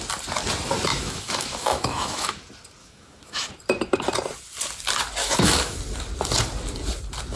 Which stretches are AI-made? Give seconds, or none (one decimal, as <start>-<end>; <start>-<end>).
0.9-2.4; 2.8-3.5; 5.2-5.8